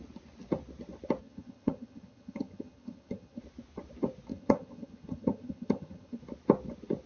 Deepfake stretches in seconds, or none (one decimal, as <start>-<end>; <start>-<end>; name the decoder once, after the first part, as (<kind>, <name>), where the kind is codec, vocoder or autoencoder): 1.2-3.4 (vocoder, HiFi-GAN); 4.3-6.2